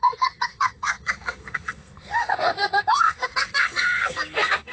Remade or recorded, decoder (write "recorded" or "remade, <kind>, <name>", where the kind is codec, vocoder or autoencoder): remade, codec, SNAC